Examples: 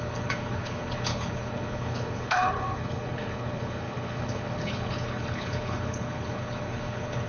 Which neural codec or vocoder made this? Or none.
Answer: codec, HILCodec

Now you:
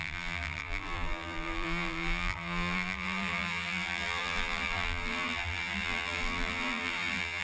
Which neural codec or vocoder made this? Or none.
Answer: vocoder, BigVGAN v2